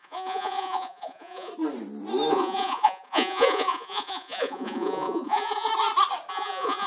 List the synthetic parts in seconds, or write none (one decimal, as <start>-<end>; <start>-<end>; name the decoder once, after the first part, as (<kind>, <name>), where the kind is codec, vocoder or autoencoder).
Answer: 0.0-1.5 (vocoder, Vocos); 2.3-5.7; 6.3-6.9